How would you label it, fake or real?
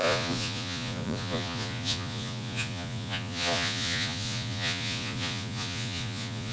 fake